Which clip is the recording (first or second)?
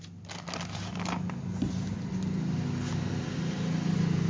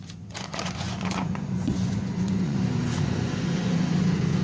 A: first